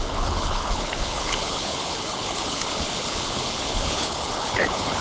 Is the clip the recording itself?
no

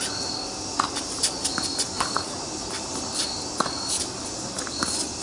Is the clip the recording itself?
yes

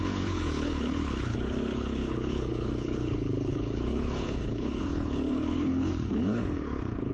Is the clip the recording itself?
no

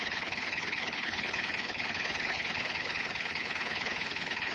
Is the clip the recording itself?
no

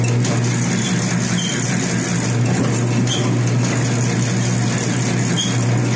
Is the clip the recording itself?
yes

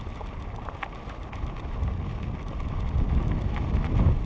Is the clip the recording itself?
yes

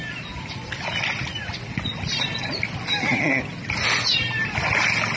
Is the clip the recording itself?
yes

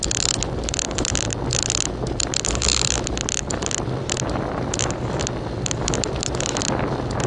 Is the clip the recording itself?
yes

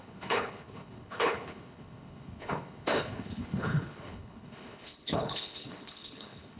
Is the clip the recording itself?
no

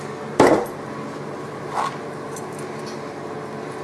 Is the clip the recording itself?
yes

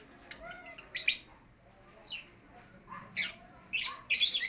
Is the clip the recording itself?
yes